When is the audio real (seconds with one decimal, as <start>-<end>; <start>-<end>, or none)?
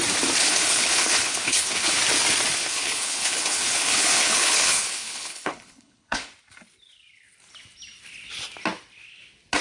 0.0-0.4; 1.9-2.6; 6.3-9.6